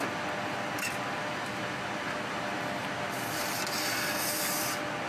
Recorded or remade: recorded